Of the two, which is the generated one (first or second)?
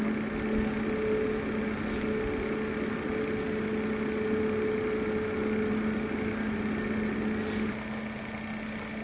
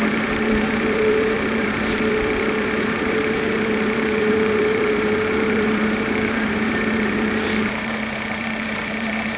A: second